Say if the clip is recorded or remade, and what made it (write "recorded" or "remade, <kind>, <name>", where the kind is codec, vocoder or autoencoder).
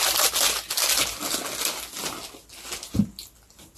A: recorded